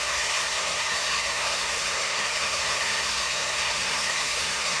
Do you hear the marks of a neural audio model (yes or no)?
yes